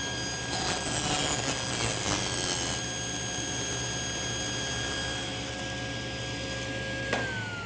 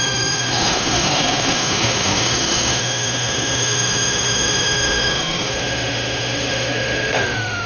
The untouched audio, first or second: first